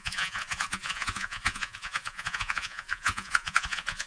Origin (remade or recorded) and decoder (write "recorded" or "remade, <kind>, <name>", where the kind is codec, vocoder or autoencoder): remade, vocoder, Vocos